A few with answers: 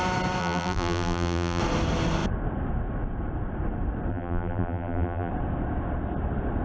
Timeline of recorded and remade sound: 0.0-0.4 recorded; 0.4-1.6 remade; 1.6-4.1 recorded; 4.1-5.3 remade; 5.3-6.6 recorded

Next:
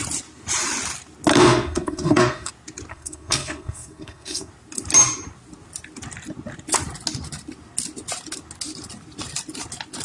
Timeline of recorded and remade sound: 0.0-1.3 recorded; 1.3-2.5 remade; 2.5-2.9 recorded; 2.9-4.5 remade; 4.5-10.0 recorded

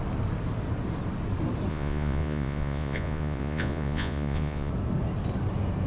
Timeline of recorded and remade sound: 0.0-1.7 recorded; 1.7-4.7 remade; 4.7-5.9 recorded

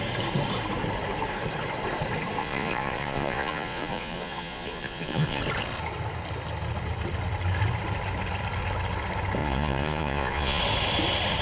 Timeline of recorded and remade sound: 0.0-2.4 recorded; 2.4-5.4 remade; 5.4-9.4 recorded; 9.4-10.6 remade; 10.6-11.4 recorded